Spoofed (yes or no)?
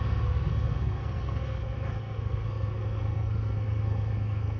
yes